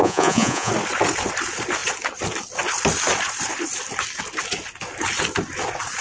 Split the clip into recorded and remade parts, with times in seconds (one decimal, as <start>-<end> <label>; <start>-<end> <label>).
0.0-0.7 remade; 0.7-6.0 recorded